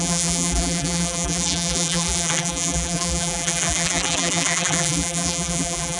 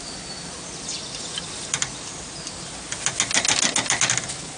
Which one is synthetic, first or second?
first